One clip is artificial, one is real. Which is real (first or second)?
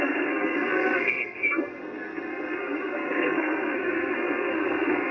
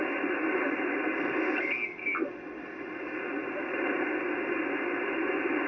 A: second